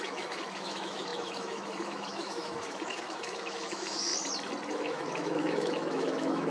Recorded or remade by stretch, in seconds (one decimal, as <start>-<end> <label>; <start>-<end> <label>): 0.0-4.1 remade; 4.1-4.7 recorded; 4.7-6.5 remade